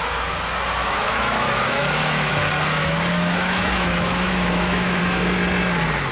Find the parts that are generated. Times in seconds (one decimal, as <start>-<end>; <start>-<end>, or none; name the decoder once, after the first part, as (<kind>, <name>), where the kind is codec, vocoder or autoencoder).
0.8-2.3 (autoencoder, DAC-VAE); 2.8-5.0